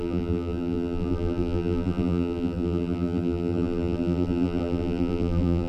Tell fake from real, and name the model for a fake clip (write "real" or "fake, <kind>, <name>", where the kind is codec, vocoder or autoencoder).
fake, vocoder, BigVGAN v2